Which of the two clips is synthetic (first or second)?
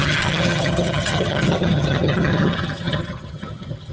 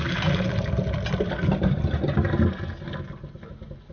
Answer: first